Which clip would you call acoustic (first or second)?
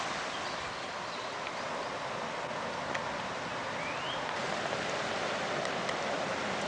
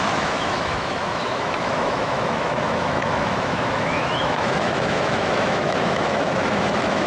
first